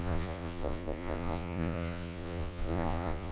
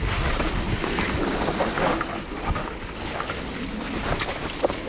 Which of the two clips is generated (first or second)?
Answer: first